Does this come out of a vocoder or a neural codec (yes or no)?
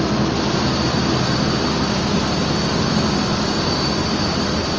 yes